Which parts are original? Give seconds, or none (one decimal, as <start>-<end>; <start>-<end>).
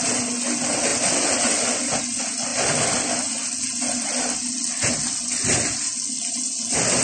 0.0-7.0